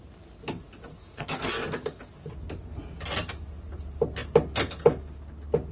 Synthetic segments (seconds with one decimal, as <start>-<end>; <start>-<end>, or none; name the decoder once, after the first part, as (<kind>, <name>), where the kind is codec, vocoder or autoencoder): 0.9-1.5 (codec, SNAC)